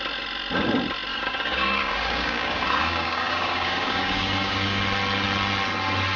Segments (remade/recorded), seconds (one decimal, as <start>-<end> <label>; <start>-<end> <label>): 0.0-1.1 recorded; 1.1-4.8 remade; 4.8-6.2 recorded